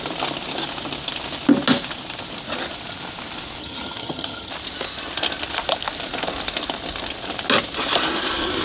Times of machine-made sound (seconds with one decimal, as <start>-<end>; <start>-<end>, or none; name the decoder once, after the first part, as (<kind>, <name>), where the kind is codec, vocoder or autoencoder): 3.6-4.5 (vocoder, HiFi-GAN)